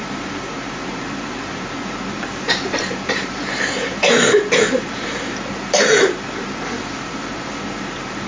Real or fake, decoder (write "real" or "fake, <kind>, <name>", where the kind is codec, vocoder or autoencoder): fake, vocoder, BigVGAN v2